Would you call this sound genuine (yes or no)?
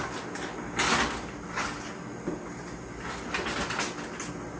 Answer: yes